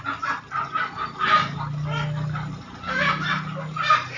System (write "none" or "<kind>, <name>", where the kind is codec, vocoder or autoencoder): none